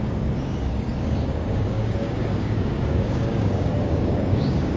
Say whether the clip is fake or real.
fake